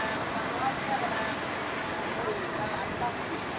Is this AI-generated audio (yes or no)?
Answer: no